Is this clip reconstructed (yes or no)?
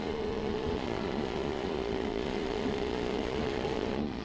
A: yes